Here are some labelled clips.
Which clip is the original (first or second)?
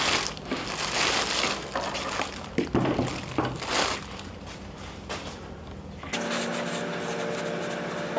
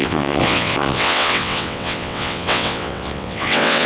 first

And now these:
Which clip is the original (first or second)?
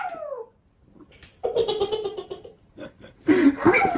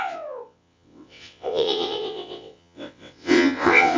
first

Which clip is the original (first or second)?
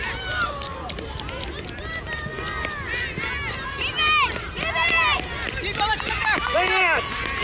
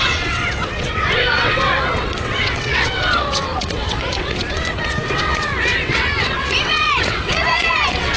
first